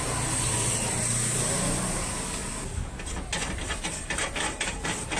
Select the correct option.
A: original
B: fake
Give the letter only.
A